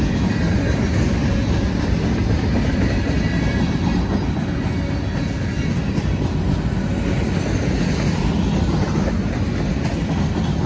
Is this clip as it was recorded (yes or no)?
yes